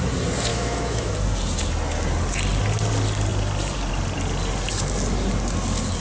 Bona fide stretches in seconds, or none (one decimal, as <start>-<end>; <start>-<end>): 0.0-0.5; 1.1-6.0